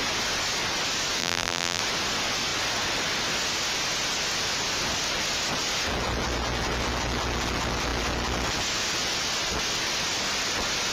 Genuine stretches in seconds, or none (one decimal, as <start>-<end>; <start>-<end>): 0.0-1.2; 1.8-10.9